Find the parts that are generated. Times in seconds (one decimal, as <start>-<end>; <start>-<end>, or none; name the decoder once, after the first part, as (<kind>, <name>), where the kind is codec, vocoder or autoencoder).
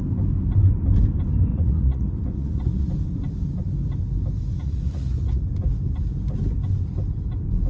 1.5-2.9 (vocoder, Vocos); 4.6-5.4